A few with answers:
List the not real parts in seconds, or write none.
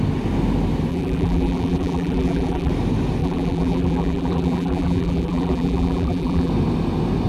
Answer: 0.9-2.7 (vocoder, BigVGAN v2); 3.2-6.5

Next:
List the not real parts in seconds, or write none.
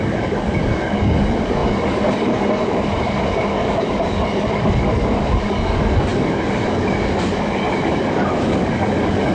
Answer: 0.0-9.3 (codec, DAC)